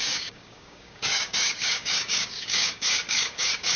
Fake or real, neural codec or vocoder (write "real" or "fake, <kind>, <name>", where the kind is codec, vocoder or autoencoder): fake, codec, DAC